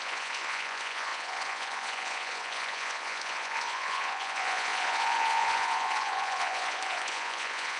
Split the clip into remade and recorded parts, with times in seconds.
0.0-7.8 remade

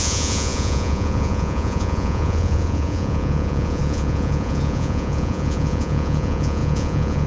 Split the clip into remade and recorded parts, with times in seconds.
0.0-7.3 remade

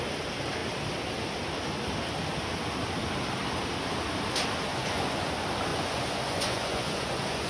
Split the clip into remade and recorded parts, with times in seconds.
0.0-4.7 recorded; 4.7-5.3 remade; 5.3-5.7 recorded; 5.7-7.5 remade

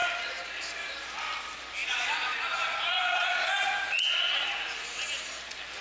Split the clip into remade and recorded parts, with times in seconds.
0.0-1.8 recorded; 1.8-5.0 remade; 5.0-5.8 recorded

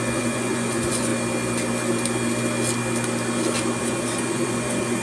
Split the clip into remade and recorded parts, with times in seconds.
0.0-1.1 remade; 1.1-3.8 recorded; 3.8-5.0 remade